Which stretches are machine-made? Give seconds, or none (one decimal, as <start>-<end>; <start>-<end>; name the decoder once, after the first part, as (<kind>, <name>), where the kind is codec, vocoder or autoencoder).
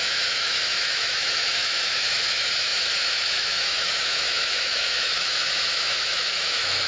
0.0-6.9 (autoencoder, DAC-VAE)